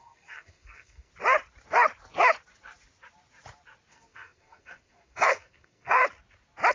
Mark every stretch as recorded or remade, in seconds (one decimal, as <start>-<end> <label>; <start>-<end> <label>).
0.0-1.1 remade; 1.1-3.9 recorded; 3.9-6.0 remade; 6.0-6.7 recorded